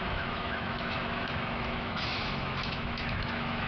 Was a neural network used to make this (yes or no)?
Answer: yes